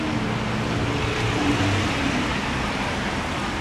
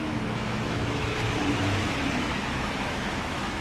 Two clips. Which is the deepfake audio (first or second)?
second